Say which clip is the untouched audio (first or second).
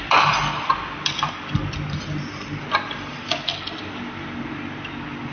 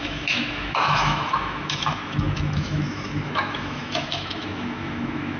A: first